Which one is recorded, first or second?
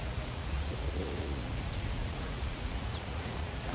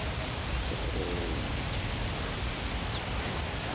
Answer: second